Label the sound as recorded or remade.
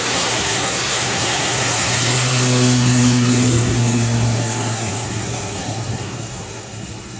remade